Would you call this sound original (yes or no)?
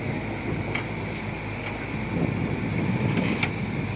yes